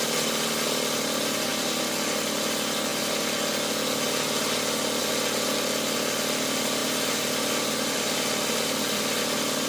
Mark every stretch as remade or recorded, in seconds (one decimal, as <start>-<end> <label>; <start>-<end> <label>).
0.0-6.8 recorded; 6.8-8.8 remade; 8.8-9.7 recorded